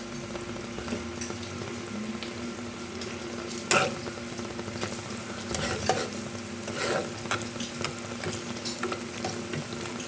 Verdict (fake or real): real